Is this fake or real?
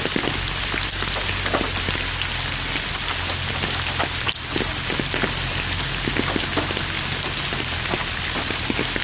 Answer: real